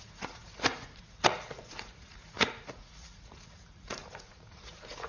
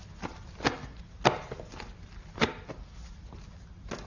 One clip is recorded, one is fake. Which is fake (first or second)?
first